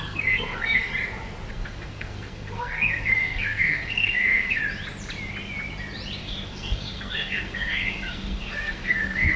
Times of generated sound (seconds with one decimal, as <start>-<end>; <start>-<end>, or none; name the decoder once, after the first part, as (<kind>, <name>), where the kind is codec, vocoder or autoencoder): 0.0-0.9 (codec, SNAC); 1.5-4.6; 6.2-9.4